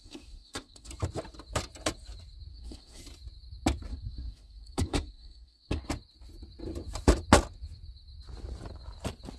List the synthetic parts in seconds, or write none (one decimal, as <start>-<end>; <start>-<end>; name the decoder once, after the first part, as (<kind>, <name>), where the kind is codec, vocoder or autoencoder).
0.0-0.9 (codec, SNAC); 2.5-3.0; 3.9-5.8